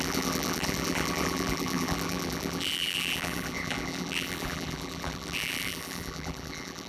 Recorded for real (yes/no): no